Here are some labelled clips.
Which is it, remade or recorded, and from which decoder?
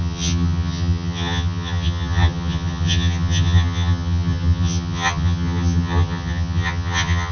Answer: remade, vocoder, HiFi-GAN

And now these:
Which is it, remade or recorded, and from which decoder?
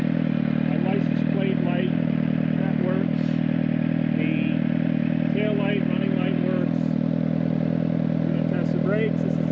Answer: recorded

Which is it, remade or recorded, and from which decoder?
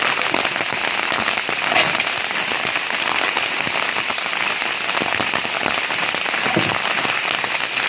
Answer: recorded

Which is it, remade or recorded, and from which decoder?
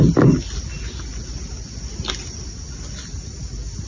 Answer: recorded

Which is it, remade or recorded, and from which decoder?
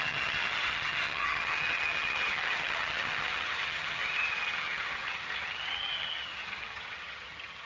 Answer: remade, vocoder, HiFi-GAN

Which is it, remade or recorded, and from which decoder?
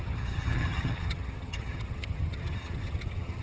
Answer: remade, vocoder, HiFi-GAN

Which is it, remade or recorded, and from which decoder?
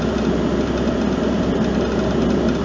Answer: recorded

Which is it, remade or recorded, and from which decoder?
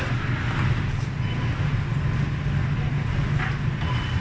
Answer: recorded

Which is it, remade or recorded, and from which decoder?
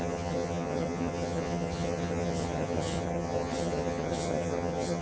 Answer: remade, vocoder, HiFi-GAN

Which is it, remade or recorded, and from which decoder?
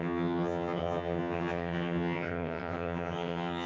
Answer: remade, vocoder, HiFi-GAN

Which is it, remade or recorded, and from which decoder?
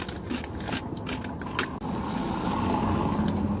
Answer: recorded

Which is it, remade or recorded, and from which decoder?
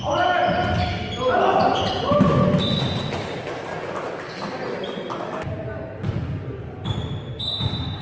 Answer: recorded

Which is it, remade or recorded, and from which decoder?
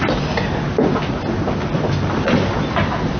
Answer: recorded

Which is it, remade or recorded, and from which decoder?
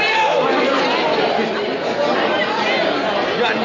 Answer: recorded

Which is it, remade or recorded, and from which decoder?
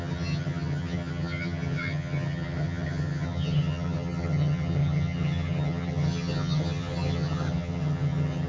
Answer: remade, vocoder, HiFi-GAN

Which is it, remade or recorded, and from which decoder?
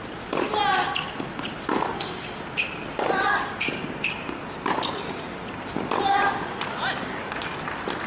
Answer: recorded